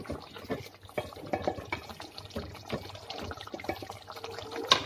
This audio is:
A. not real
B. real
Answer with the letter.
B